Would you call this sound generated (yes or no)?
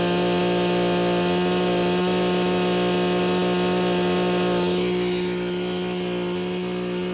no